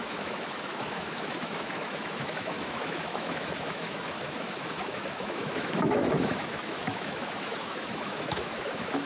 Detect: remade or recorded remade